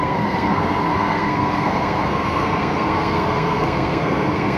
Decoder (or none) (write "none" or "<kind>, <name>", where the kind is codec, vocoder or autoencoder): codec, SNAC